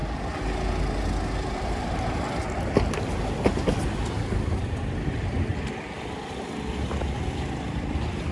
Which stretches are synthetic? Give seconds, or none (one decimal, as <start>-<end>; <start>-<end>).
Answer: 1.5-2.4; 3.2-5.5; 6.2-8.3